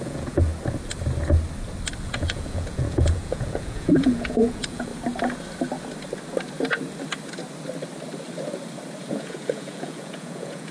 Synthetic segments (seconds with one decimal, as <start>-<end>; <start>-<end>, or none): 0.0-0.5; 2.0-4.9; 9.1-10.7